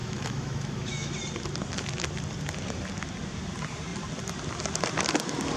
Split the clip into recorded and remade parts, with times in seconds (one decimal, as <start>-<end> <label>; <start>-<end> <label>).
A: 0.0-1.1 remade; 1.1-5.6 recorded